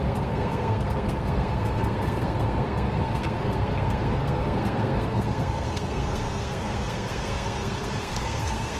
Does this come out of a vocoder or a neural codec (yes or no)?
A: yes